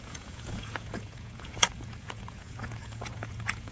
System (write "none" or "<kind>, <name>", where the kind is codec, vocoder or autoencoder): vocoder, Vocos